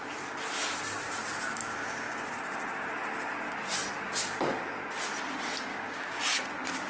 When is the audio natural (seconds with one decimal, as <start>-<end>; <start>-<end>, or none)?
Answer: 0.0-1.6; 2.4-5.7; 6.2-6.9